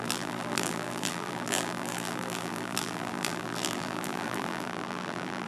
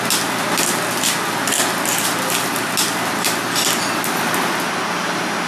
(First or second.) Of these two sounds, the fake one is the first